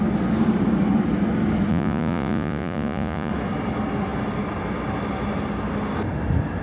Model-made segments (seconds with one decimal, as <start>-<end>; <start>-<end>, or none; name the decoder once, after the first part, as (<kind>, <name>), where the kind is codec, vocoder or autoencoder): 1.7-3.3 (vocoder, Vocos)